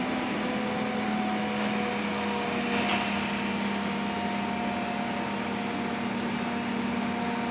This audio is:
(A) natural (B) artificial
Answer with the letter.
A